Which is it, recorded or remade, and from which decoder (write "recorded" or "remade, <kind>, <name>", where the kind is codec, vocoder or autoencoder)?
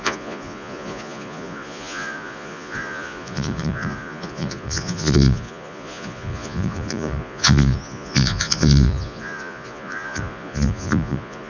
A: remade, vocoder, Vocos